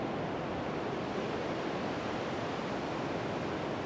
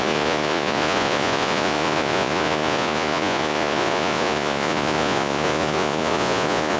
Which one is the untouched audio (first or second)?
first